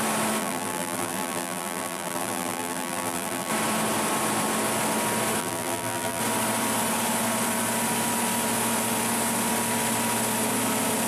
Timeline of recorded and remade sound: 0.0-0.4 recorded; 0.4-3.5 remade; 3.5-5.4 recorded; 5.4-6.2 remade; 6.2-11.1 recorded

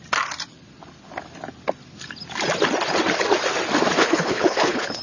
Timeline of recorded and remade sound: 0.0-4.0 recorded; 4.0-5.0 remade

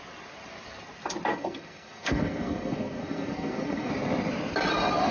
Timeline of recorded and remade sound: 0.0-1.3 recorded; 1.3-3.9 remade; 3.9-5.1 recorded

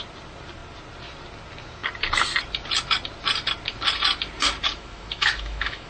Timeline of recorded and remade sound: 0.0-4.7 recorded; 4.7-5.9 remade

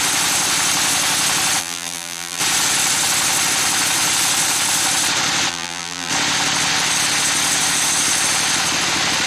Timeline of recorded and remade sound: 0.0-1.6 recorded; 1.6-2.4 remade; 2.4-5.5 recorded; 5.5-6.1 remade; 6.1-9.3 recorded